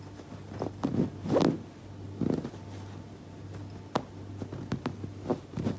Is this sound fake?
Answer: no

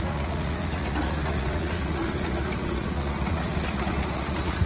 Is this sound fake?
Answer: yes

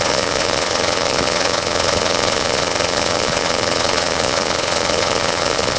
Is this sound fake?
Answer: yes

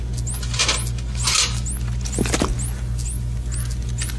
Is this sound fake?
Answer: no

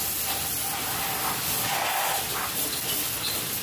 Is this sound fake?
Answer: no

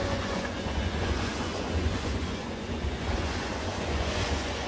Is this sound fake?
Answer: yes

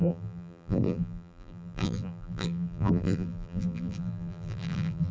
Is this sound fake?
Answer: yes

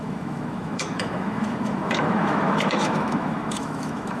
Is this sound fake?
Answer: yes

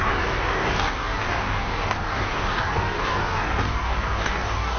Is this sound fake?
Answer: yes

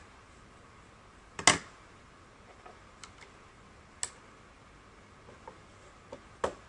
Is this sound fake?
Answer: no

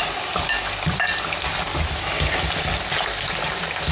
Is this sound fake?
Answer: no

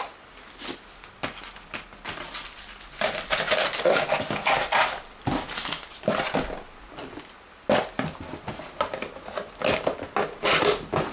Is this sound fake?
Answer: no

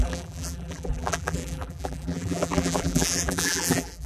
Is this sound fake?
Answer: yes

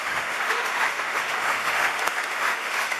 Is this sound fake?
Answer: yes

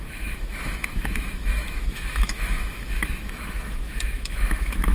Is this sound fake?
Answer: yes